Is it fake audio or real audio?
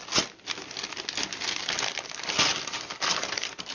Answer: real